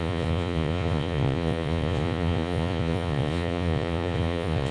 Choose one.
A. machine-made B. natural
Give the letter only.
A